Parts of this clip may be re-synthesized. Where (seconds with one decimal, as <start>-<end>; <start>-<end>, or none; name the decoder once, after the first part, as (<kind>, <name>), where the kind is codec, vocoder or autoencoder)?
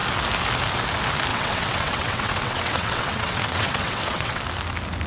1.3-4.4 (vocoder, WaveNeXt)